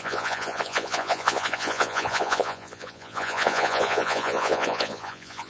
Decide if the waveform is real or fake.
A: fake